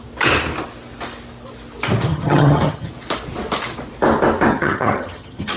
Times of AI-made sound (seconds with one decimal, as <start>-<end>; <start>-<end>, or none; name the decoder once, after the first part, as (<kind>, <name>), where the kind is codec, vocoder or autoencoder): 2.1-2.9 (vocoder, HiFi-GAN); 4.5-5.6